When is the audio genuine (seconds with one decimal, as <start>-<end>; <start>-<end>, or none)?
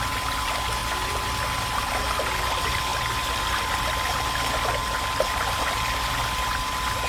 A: 0.0-7.1